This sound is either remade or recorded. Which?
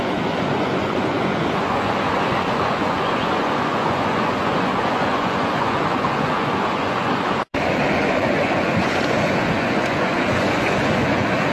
remade